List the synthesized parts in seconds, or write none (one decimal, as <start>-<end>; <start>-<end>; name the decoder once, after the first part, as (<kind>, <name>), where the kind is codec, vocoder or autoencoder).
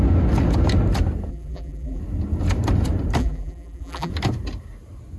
1.3-2.0 (vocoder, BigVGAN v2); 3.2-4.1